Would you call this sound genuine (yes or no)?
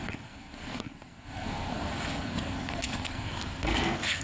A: no